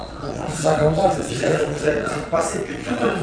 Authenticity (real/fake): fake